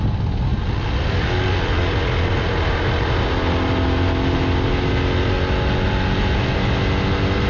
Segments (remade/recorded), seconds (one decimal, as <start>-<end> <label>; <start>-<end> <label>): 0.0-7.5 recorded